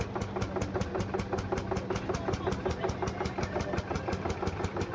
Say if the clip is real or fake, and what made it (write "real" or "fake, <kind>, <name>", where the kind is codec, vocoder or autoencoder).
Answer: real